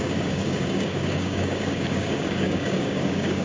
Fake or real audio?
fake